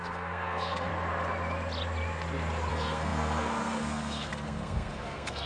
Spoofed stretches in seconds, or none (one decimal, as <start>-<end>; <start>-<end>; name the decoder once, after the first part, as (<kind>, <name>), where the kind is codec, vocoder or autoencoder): 0.0-0.9 (codec, SNAC); 2.7-5.5